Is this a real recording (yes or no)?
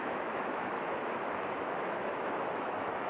no